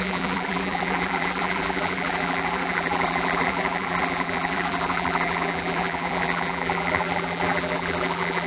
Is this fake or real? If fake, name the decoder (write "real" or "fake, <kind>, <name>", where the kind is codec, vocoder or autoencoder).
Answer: fake, vocoder, BigVGAN v2